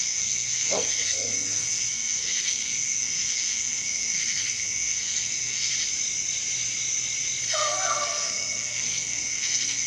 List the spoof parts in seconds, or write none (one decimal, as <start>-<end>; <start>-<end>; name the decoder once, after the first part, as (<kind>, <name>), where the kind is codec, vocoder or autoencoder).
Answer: 0.0-5.7 (codec, SNAC); 7.5-9.9